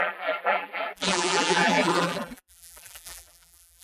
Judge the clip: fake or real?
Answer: fake